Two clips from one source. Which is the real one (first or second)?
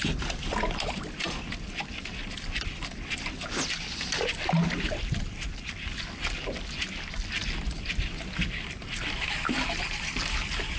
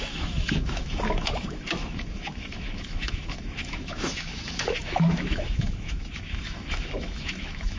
first